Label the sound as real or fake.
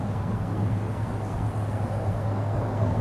fake